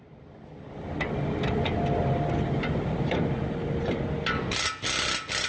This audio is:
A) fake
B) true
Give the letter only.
B